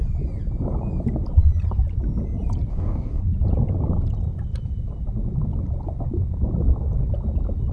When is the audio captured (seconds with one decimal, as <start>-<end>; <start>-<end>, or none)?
0.0-2.7; 3.2-7.7